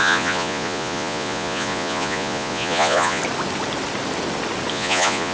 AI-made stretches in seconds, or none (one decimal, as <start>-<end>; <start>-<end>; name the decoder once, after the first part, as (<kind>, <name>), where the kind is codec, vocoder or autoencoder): 0.0-3.2 (vocoder, Vocos); 4.7-5.3